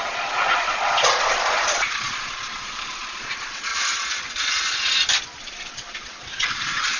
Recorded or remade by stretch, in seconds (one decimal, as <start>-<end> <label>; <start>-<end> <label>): 0.0-3.7 remade; 3.7-5.4 recorded; 5.4-7.0 remade

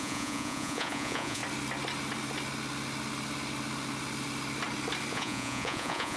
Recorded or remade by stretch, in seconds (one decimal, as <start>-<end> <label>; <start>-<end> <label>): 0.0-1.4 remade; 1.4-5.1 recorded; 5.1-6.2 remade

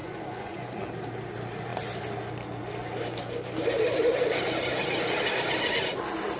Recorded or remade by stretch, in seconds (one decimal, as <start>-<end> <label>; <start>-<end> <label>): 0.0-0.8 remade; 0.8-6.4 recorded

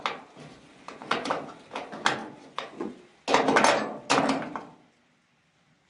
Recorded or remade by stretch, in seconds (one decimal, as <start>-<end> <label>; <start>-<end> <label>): 0.0-0.5 recorded; 0.5-1.3 remade; 1.3-2.2 recorded; 2.2-3.0 remade; 3.0-5.9 recorded

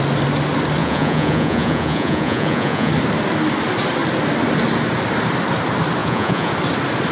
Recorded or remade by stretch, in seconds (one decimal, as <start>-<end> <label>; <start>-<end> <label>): 0.0-0.8 recorded; 0.8-2.9 remade; 2.9-6.0 recorded; 6.0-6.5 remade; 6.5-7.1 recorded

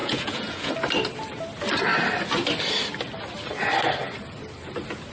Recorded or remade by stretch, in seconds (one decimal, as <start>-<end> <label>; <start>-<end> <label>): 0.0-0.7 remade; 0.7-5.1 recorded

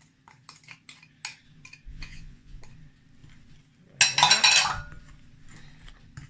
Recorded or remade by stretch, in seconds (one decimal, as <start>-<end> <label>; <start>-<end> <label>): 0.0-1.9 recorded; 1.9-2.6 remade; 2.6-6.3 recorded

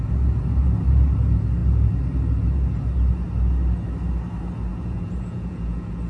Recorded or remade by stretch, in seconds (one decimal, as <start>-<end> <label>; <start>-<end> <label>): 0.0-4.7 recorded; 4.7-6.1 remade